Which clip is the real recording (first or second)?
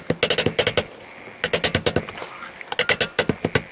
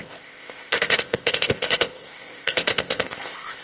first